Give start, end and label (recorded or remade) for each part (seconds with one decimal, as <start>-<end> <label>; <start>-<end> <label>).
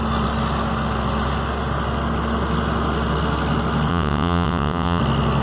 0.0-3.9 recorded; 3.9-5.0 remade; 5.0-5.4 recorded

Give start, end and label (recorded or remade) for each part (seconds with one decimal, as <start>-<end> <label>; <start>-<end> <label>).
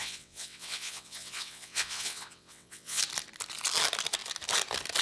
0.0-3.0 remade; 3.0-5.0 recorded